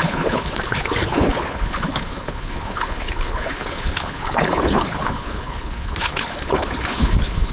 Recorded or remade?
remade